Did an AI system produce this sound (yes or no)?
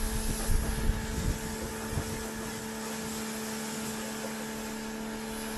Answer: no